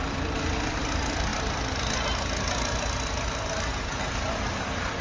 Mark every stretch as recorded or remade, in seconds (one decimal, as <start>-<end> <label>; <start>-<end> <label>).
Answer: 0.0-5.0 recorded